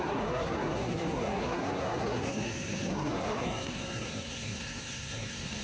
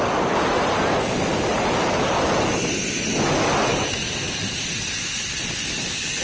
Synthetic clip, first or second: first